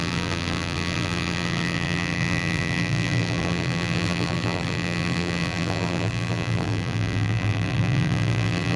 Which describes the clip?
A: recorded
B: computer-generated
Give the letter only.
B